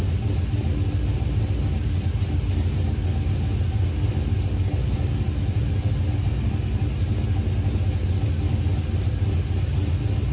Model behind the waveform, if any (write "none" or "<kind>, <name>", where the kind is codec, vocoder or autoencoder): none